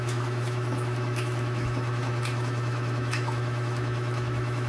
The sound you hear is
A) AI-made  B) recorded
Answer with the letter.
A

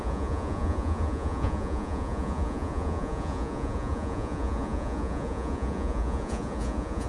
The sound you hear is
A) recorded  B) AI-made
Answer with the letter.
B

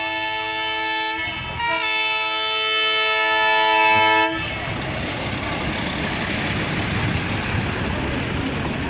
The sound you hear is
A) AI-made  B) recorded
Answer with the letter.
B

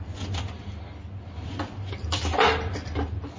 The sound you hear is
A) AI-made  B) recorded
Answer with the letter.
B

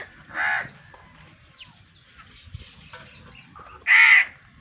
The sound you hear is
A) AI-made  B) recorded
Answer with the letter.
B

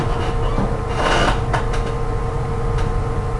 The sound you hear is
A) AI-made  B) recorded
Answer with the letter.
B